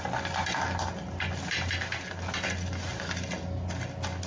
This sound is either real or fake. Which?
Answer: real